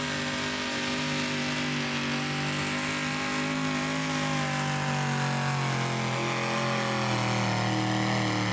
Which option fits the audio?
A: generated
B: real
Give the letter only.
B